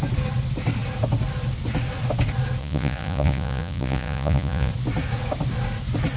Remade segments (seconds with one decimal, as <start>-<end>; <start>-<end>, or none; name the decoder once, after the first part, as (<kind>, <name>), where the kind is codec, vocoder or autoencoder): 2.6-4.7 (vocoder, Vocos)